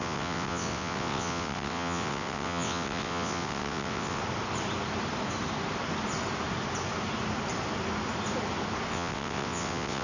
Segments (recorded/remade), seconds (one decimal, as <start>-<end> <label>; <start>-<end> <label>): 0.0-4.2 remade; 4.2-8.9 recorded; 8.9-10.0 remade